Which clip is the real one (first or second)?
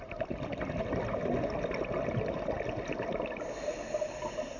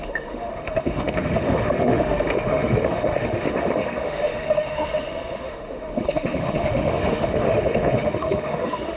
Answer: first